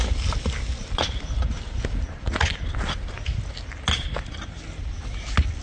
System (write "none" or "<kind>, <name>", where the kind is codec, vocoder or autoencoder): none